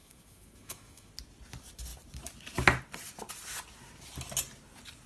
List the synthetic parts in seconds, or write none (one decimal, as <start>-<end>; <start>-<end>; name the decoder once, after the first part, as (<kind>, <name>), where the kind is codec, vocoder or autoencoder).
0.0-1.1 (autoencoder, DAC-VAE)